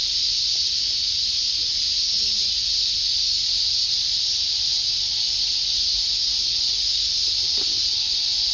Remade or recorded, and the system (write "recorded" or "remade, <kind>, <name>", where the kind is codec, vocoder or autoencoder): recorded